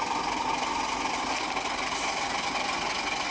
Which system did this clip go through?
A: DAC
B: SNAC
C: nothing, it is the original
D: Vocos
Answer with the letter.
C